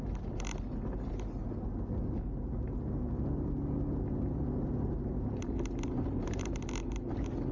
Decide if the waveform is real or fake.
real